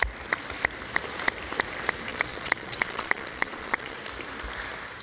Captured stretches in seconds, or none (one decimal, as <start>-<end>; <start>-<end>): 0.0-2.1; 4.0-5.0